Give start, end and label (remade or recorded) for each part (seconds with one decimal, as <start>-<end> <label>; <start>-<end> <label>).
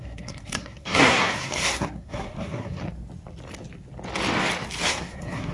0.0-2.8 remade; 2.8-4.9 recorded; 4.9-5.5 remade